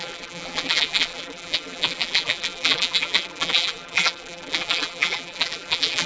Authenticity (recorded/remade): remade